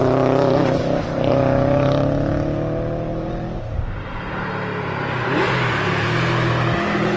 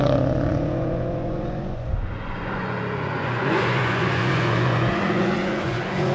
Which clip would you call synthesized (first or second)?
second